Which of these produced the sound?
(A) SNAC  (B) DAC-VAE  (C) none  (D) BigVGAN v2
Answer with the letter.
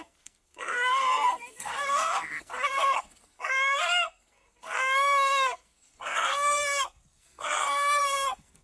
A